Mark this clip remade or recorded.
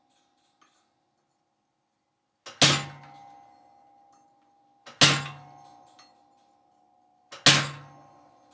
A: recorded